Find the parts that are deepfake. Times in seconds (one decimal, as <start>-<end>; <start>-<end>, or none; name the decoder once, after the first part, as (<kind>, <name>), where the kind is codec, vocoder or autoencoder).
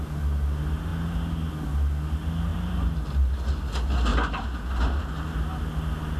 2.5-3.5 (vocoder, BigVGAN v2); 4.1-5.6